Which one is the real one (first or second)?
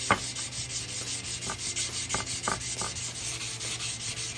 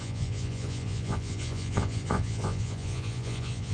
first